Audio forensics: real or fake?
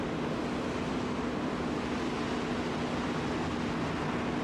real